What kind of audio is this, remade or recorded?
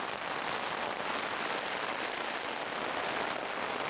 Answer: recorded